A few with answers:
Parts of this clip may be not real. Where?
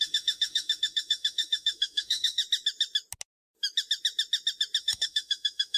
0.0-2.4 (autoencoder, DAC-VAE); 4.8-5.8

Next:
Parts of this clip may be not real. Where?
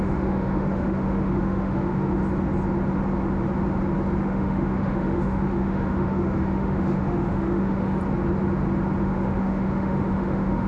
0.0-2.2 (autoencoder, DAC-VAE); 4.2-8.0; 9.0-10.7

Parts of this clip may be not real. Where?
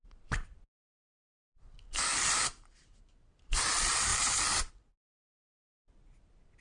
none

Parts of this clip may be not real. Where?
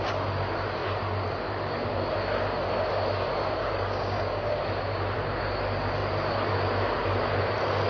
3.6-4.5 (codec, DAC)